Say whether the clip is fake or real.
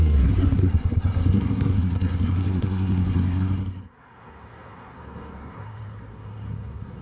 fake